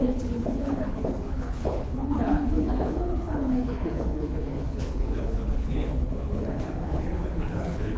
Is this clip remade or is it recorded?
remade